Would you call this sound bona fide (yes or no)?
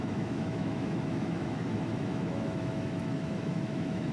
no